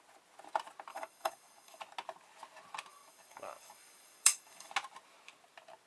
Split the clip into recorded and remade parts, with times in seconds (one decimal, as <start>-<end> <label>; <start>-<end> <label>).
0.0-0.9 recorded; 0.9-1.8 remade; 1.8-2.9 recorded; 2.9-4.7 remade; 4.7-5.9 recorded